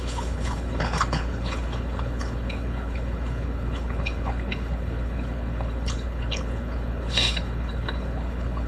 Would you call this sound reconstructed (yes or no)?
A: yes